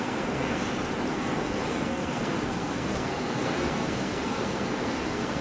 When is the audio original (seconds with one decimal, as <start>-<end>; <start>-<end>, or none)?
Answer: 0.6-1.1